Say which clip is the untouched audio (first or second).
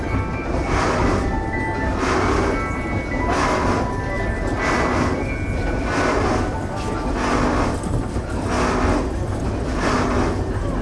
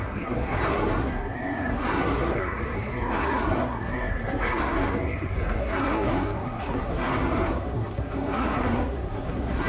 first